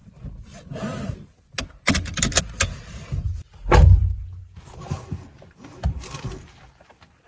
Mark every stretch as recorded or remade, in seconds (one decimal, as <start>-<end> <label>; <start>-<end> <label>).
0.0-7.3 recorded